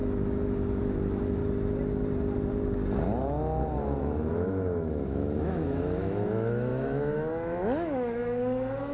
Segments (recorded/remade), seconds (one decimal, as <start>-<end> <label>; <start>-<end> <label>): 0.0-1.4 remade; 1.4-4.0 recorded; 4.0-8.9 remade